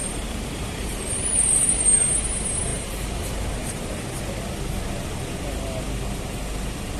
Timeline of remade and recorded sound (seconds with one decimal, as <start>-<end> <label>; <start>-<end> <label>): 0.0-1.8 remade; 1.8-2.7 recorded; 2.7-4.2 remade; 4.2-7.0 recorded